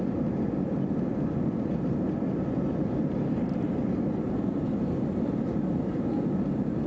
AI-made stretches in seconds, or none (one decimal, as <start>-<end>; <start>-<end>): none